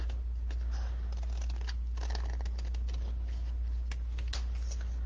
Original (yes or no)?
yes